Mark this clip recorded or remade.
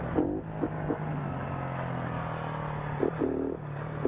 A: recorded